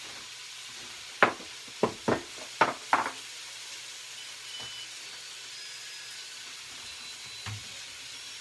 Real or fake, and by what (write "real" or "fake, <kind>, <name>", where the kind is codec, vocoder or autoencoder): real